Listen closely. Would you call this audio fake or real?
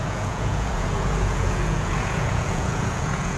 fake